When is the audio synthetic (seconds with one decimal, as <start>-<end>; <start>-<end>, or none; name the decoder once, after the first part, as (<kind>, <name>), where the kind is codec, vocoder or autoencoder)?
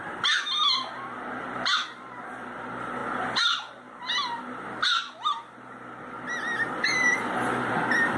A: 0.6-1.3 (vocoder, BigVGAN v2)